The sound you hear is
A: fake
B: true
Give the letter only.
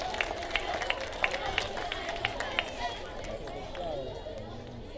B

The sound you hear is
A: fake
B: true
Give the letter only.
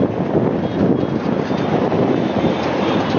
B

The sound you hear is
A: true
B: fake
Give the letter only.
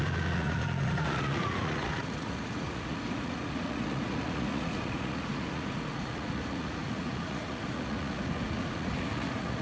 B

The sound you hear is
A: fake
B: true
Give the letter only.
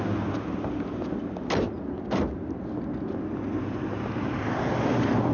B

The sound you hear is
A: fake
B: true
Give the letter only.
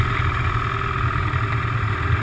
B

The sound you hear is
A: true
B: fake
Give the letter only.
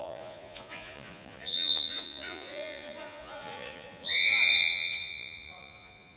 B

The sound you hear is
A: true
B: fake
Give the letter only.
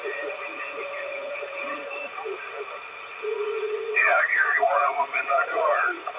B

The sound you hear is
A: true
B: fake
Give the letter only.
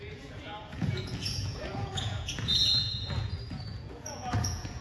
B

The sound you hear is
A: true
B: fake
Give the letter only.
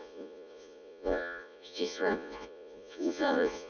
B